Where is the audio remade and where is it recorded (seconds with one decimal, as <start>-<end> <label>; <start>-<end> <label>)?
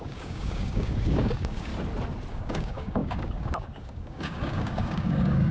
0.0-1.7 remade; 1.7-2.3 recorded; 2.3-5.5 remade